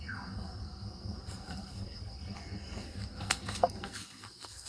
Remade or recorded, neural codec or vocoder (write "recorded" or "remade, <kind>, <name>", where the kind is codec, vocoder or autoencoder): remade, codec, SNAC